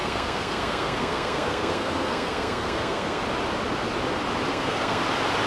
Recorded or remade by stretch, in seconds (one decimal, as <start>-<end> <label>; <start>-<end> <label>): 0.0-3.2 remade; 3.2-4.5 recorded; 4.5-5.0 remade; 5.0-5.5 recorded